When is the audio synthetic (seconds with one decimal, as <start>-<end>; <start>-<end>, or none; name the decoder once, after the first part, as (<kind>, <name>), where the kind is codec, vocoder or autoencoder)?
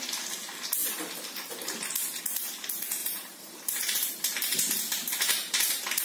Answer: 3.0-6.0 (vocoder, BigVGAN v2)